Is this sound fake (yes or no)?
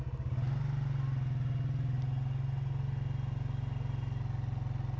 no